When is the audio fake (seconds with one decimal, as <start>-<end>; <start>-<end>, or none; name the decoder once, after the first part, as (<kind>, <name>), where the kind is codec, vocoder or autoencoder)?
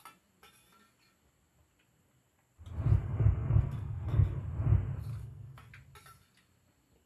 3.0-4.4 (codec, SNAC); 5.1-5.7